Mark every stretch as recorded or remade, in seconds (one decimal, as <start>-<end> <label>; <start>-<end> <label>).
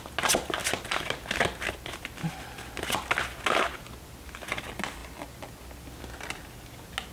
0.0-7.1 recorded